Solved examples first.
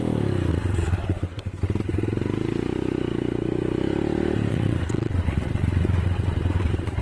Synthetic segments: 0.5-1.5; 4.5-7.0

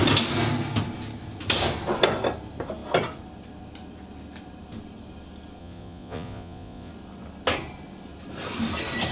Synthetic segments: 5.6-6.9

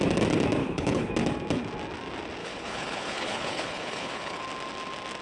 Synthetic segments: 0.6-1.1; 2.4-4.4

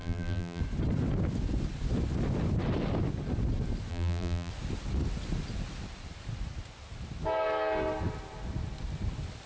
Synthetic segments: 0.0-0.6; 3.9-4.5

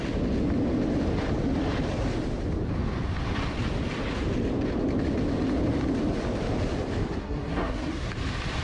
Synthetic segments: 7.2-8.1

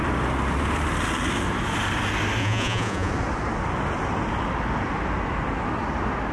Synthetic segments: 2.4-3.1